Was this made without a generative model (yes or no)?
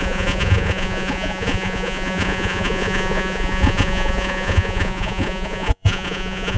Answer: no